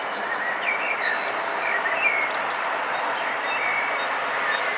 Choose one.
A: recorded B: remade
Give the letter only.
A